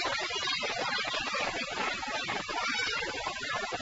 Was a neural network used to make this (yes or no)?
yes